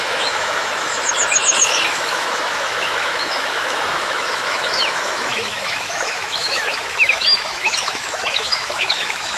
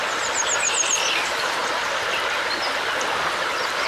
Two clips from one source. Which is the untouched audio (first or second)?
second